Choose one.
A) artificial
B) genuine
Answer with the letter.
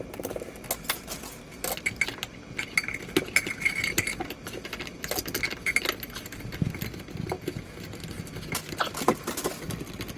B